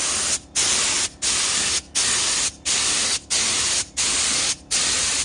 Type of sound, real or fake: real